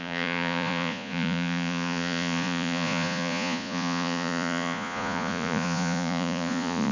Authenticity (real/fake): fake